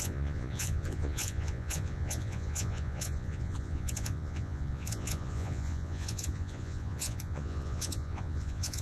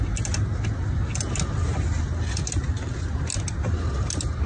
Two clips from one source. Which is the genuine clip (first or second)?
second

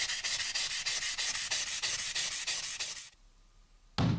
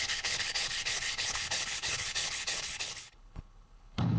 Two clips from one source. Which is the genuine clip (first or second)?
first